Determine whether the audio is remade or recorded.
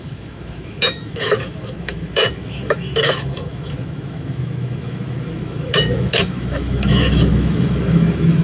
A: remade